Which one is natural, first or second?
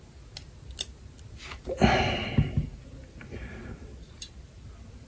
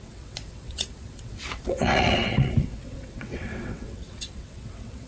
first